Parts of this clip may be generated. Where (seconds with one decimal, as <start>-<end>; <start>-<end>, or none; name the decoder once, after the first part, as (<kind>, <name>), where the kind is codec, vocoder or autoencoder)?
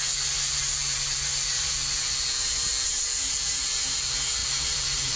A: 4.4-5.2 (vocoder, BigVGAN v2)